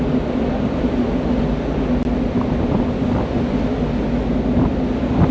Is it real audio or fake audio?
real